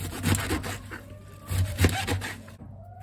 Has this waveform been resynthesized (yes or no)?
no